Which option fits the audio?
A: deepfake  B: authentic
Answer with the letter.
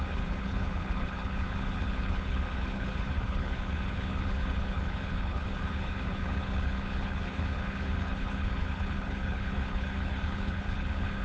A